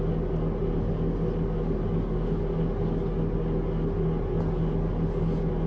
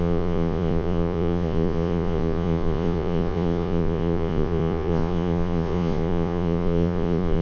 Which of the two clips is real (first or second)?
first